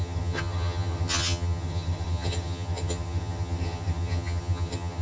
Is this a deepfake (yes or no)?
yes